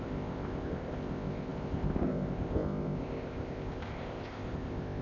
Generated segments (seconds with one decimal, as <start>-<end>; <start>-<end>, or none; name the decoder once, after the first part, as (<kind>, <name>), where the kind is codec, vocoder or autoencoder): 0.0-5.0 (codec, ZipCodec)